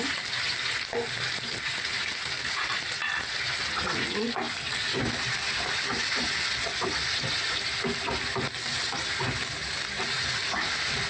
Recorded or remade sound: recorded